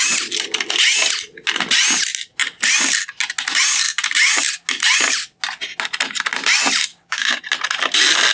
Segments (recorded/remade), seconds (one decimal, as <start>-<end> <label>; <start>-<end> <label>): 0.0-6.9 recorded; 6.9-7.4 remade; 7.4-8.3 recorded